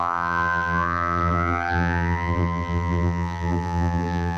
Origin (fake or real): fake